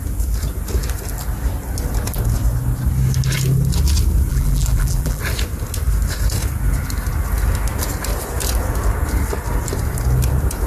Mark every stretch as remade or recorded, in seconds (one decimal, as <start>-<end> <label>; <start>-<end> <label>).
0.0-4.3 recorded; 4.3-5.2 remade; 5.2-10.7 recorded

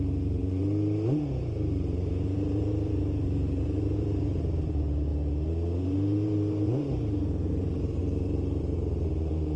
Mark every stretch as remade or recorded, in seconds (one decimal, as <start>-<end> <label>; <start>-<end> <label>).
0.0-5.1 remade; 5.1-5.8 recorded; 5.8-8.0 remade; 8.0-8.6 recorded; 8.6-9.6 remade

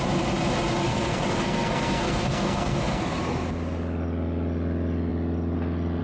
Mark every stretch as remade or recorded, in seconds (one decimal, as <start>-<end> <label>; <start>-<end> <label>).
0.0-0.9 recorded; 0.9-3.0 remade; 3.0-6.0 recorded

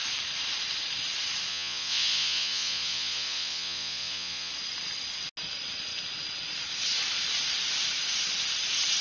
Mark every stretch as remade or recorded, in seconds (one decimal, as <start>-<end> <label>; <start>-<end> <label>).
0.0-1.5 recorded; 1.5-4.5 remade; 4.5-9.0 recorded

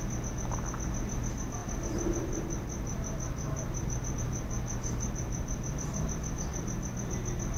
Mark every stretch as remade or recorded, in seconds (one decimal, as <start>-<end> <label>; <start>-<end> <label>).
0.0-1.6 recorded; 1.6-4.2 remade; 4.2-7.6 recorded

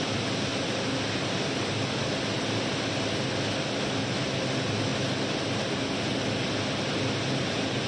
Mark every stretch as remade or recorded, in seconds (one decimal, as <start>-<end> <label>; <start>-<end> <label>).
0.0-7.9 recorded